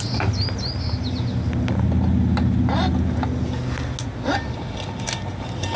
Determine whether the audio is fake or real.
real